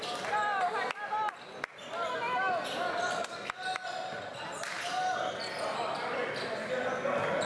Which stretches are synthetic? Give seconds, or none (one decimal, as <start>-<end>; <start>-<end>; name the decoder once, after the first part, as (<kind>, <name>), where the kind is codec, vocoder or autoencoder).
none